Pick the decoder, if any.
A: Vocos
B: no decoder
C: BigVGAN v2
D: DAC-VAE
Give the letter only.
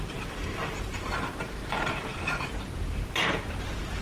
C